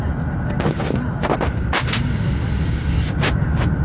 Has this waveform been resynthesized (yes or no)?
no